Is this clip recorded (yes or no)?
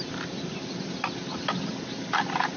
yes